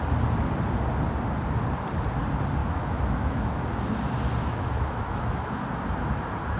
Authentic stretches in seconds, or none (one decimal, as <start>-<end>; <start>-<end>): 0.0-2.6; 3.6-4.4; 5.6-6.6